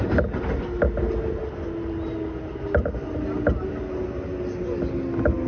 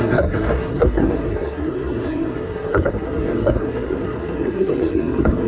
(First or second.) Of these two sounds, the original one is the first